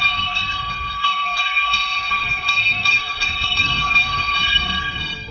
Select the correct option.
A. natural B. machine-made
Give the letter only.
B